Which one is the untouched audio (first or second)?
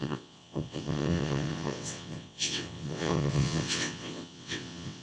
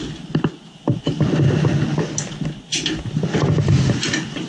second